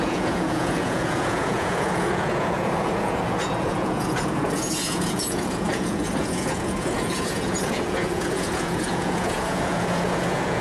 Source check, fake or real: fake